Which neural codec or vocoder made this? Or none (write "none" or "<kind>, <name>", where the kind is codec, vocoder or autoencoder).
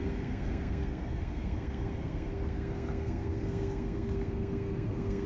codec, SNAC